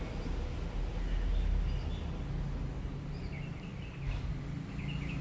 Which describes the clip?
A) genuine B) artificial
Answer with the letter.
A